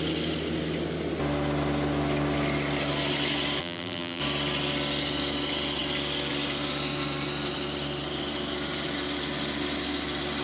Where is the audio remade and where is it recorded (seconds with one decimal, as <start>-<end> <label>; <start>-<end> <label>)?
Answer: 0.0-3.6 recorded; 3.6-4.2 remade; 4.2-10.4 recorded